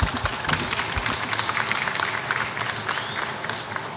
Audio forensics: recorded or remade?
recorded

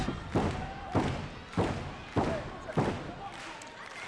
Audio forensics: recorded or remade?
recorded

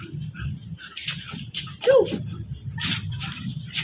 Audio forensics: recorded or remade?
remade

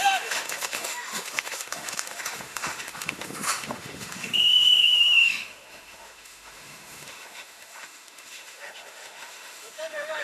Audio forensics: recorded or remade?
remade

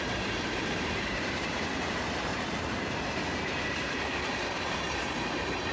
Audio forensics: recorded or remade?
remade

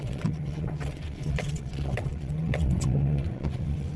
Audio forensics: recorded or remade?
remade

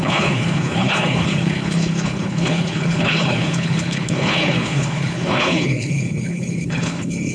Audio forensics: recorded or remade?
remade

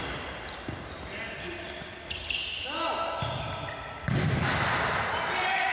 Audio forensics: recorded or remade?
recorded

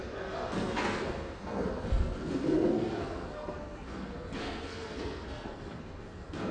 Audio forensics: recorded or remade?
remade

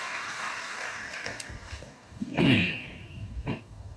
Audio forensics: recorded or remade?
remade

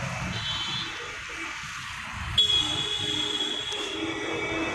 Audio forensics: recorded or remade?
recorded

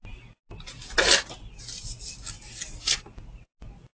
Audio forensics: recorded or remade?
recorded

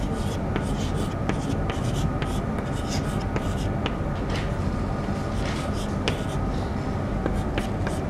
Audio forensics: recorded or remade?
recorded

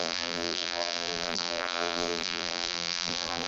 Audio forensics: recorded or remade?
remade